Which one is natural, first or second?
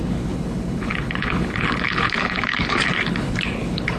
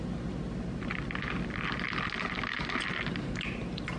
second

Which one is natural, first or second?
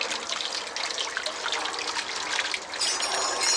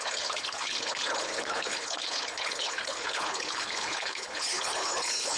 first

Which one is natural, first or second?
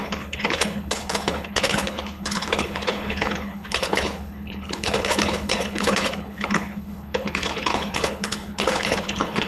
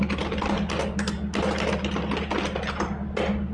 second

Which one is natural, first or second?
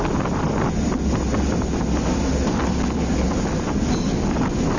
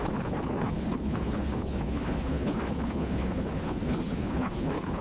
first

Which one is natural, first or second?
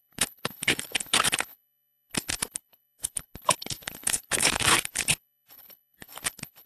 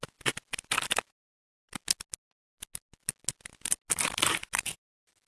second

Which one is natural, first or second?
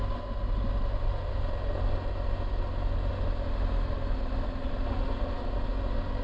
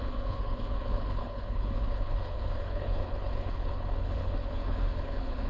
first